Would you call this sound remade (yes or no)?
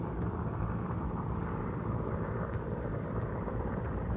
yes